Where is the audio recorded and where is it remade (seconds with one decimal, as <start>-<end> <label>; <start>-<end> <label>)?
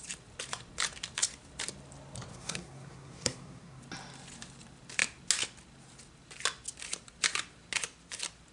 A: 0.0-2.3 recorded; 2.3-3.8 remade; 3.8-8.5 recorded